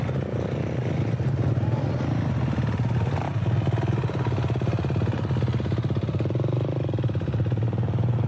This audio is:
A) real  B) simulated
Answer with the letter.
A